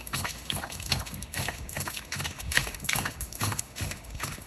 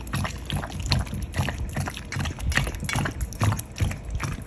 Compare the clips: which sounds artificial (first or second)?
first